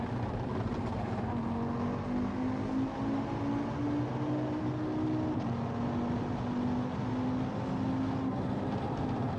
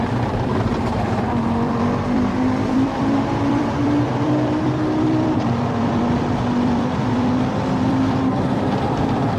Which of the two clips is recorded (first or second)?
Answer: first